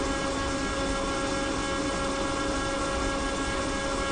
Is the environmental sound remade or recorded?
recorded